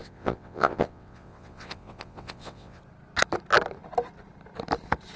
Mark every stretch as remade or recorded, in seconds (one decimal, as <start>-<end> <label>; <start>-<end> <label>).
0.0-2.8 remade; 2.8-5.2 recorded